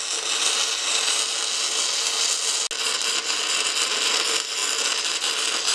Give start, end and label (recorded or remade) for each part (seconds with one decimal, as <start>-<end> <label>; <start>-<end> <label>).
0.0-5.7 recorded